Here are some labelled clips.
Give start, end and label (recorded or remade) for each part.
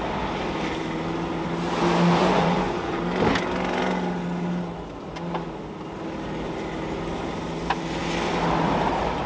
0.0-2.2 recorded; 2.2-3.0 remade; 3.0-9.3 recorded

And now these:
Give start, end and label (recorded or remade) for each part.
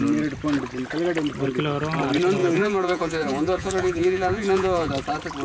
0.0-2.4 recorded; 2.4-4.9 remade; 4.9-5.4 recorded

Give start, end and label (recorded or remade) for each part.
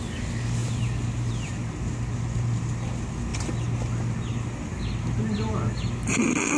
0.0-6.6 recorded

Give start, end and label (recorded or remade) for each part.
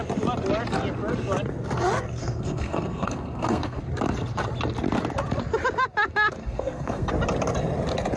0.0-2.2 recorded; 2.2-3.8 remade; 3.8-6.4 recorded; 6.4-7.1 remade; 7.1-8.2 recorded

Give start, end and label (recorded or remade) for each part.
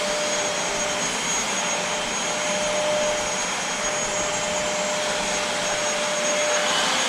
0.0-7.1 recorded